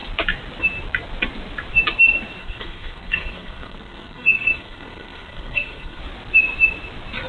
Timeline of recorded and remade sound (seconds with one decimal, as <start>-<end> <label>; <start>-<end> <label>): 0.0-2.4 recorded; 2.4-6.0 remade; 6.0-7.3 recorded